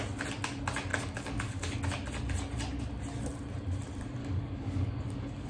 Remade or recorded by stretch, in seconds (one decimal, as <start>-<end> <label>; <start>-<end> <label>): 0.0-0.9 recorded; 0.9-1.8 remade; 1.8-4.2 recorded; 4.2-5.5 remade